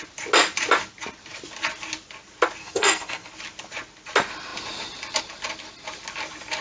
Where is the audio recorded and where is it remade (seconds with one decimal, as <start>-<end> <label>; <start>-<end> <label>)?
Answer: 0.0-2.6 recorded; 2.6-3.3 remade; 3.3-6.6 recorded